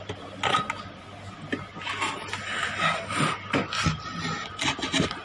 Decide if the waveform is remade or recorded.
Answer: recorded